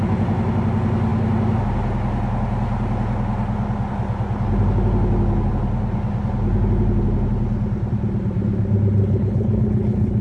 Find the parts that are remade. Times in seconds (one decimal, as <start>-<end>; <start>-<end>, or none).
9.0-10.2